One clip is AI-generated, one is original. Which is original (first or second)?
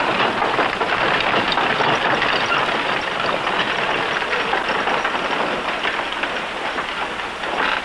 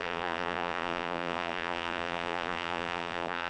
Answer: first